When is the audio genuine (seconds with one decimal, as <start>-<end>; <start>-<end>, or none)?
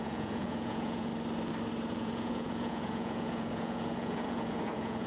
1.1-1.9